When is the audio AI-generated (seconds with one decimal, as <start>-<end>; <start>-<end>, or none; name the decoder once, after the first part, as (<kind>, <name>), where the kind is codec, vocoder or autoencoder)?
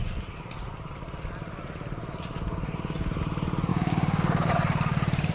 3.7-4.5 (codec, DAC)